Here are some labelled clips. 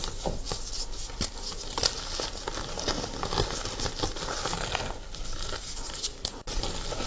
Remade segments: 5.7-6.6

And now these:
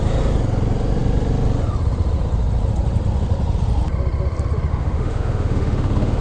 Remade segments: 4.7-6.2